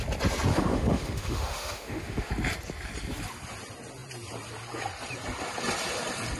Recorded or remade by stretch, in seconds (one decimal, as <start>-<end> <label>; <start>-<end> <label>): 0.0-0.5 recorded; 0.5-2.3 remade; 2.3-6.4 recorded